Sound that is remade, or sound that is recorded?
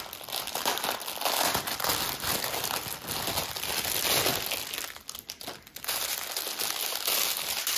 recorded